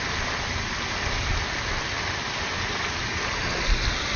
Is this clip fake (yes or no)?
no